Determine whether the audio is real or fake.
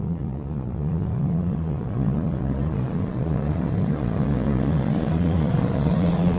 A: fake